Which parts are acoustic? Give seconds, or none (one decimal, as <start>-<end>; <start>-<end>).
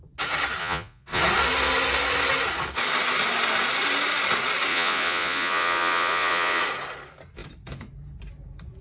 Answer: 0.0-0.6; 1.2-4.7; 6.6-8.8